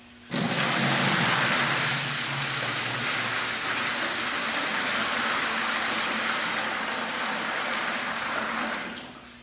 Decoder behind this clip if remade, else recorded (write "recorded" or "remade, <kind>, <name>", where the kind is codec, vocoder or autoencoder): recorded